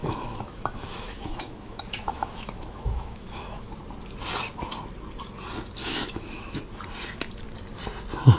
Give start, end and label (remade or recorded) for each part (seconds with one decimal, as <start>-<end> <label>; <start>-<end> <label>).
0.0-3.8 remade; 3.8-5.8 recorded; 5.8-6.6 remade; 6.6-8.4 recorded